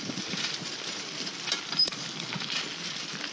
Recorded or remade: recorded